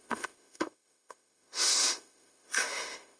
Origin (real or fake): fake